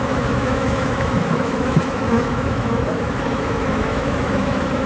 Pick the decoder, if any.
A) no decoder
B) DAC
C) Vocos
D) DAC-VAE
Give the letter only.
D